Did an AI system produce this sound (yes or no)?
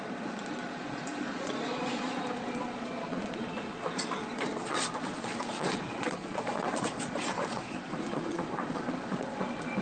yes